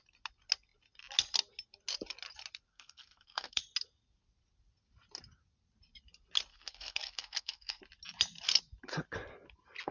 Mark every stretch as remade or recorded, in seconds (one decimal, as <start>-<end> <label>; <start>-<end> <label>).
0.0-2.7 recorded; 2.7-3.6 remade; 3.6-6.5 recorded; 6.5-7.8 remade; 7.8-9.9 recorded